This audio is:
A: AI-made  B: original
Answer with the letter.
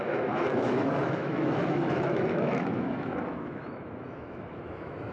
A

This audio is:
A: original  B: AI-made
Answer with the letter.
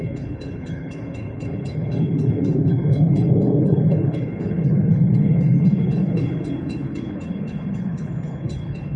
B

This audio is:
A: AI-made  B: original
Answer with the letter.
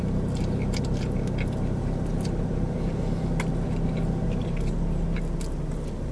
B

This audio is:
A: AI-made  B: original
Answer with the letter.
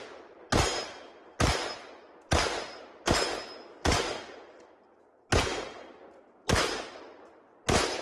B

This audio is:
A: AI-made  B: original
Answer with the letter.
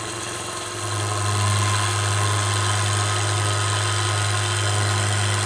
B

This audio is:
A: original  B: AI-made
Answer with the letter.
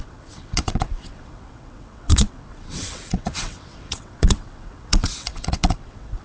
B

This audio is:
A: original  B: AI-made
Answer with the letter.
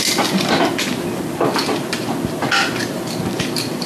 A